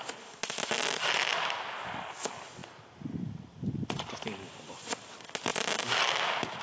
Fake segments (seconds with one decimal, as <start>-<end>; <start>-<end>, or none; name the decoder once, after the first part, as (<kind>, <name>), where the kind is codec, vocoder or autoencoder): none